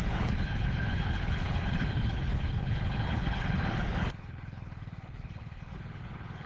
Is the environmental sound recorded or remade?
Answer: remade